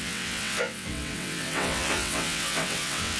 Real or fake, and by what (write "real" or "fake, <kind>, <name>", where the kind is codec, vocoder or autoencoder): fake, vocoder, WaveNeXt